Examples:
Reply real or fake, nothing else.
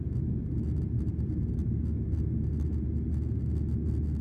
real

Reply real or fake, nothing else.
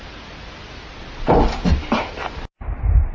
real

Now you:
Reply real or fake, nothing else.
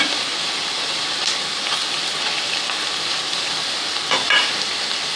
fake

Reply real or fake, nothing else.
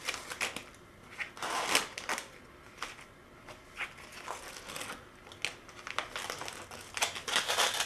real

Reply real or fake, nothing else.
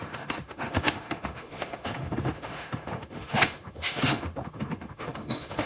fake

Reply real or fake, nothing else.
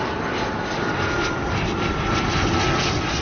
real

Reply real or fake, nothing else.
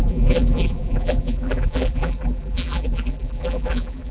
fake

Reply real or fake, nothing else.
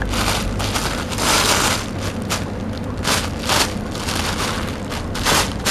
real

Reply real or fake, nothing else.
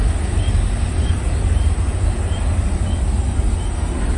real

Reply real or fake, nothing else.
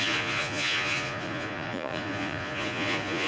fake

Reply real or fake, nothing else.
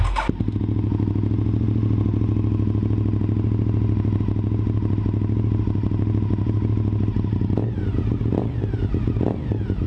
real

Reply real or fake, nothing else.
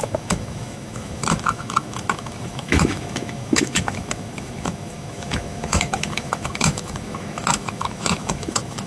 fake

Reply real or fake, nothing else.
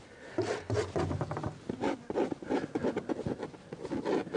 real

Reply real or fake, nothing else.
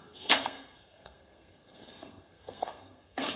fake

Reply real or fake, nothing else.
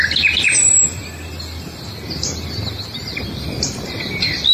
real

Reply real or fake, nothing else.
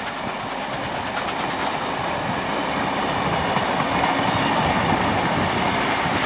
real